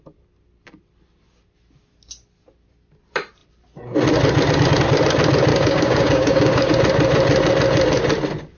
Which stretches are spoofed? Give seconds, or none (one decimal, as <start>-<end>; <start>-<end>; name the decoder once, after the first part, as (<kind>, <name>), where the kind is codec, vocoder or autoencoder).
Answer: 5.5-6.7 (codec, DAC)